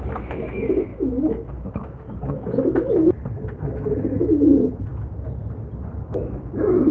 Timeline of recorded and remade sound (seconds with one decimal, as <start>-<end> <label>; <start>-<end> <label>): 0.0-3.0 remade; 3.0-3.5 recorded; 3.5-4.9 remade; 4.9-5.9 recorded; 5.9-6.9 remade